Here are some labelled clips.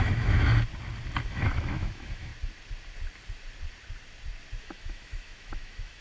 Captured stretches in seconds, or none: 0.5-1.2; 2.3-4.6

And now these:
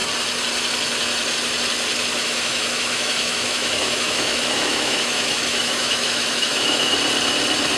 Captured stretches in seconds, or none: 0.0-2.2; 6.9-7.8

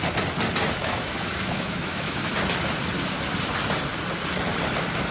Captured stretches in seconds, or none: 0.0-0.8; 2.3-5.1

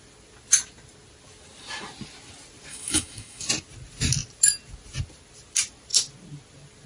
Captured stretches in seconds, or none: 0.0-2.7; 3.5-6.9

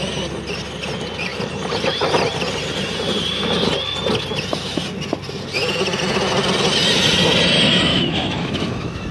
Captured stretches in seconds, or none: 0.0-7.9

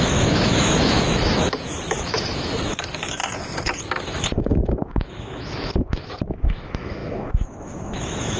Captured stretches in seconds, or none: 3.2-4.0